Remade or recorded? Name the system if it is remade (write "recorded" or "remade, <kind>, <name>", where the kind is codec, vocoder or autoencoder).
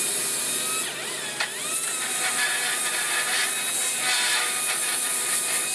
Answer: recorded